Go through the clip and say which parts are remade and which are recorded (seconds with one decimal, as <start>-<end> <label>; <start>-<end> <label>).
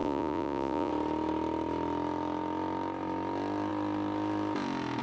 0.0-0.9 remade; 0.9-5.0 recorded